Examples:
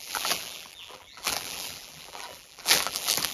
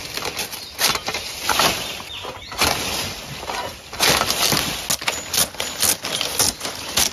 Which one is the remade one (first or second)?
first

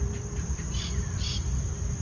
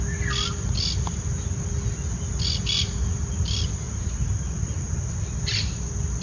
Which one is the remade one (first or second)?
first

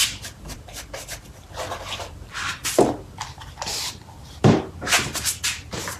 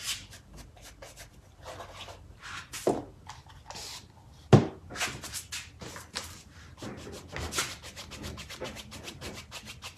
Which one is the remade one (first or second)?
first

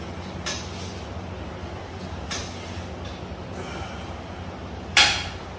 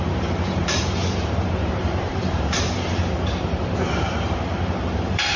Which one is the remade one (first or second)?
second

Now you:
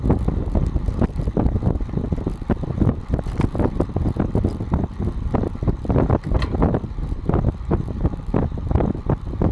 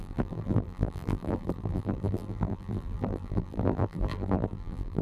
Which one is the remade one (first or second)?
second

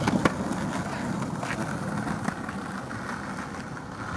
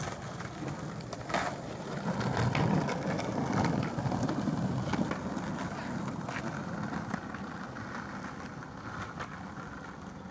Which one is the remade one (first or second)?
second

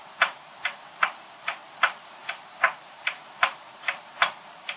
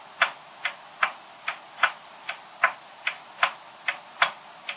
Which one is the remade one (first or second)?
first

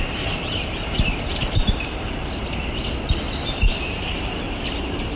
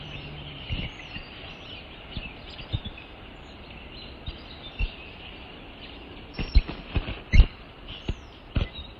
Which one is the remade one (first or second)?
second